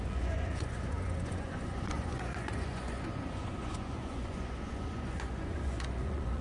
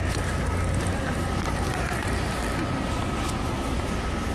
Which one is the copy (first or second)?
first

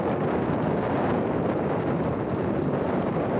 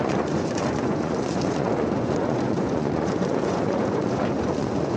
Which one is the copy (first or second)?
second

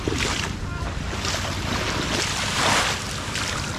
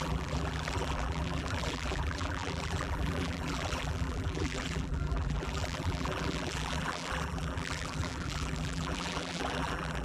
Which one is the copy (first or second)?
second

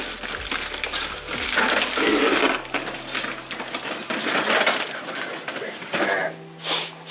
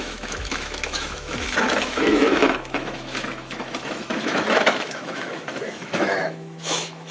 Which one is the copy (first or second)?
second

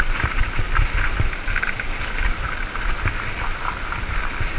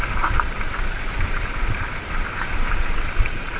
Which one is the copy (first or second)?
second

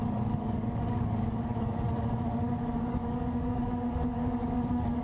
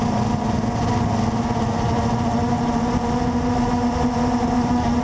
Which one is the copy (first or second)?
first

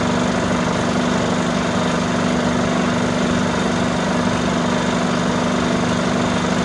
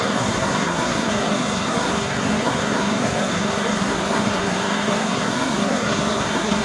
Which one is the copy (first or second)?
second